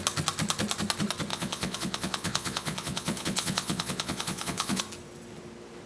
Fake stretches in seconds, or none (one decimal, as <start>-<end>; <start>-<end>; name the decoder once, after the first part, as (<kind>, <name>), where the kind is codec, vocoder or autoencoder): 1.3-4.8 (vocoder, Vocos)